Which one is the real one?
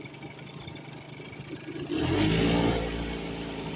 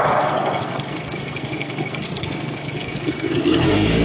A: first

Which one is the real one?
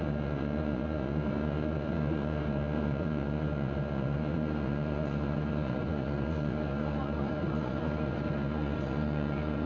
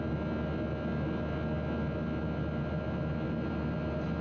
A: second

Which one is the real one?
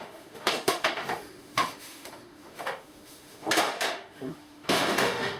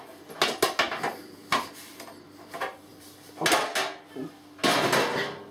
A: second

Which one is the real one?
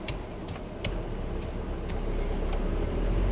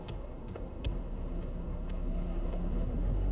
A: first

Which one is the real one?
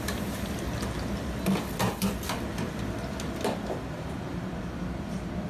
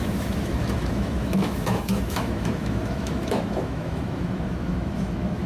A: first